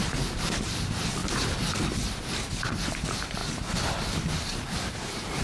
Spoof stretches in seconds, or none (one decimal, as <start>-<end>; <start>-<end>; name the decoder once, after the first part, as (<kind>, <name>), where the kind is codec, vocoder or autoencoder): 0.0-1.2 (vocoder, BigVGAN v2); 2.5-5.4